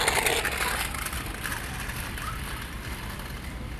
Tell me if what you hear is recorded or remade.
recorded